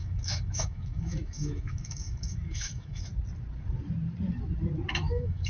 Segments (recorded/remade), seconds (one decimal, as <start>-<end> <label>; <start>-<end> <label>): 0.0-3.1 remade; 3.1-4.9 recorded; 4.9-5.5 remade